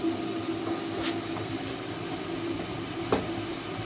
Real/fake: real